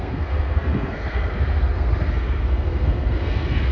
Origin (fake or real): fake